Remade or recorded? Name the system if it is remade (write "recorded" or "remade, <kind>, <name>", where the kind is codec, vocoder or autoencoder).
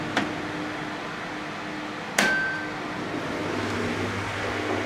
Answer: recorded